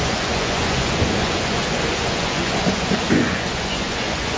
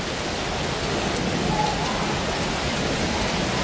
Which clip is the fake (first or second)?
first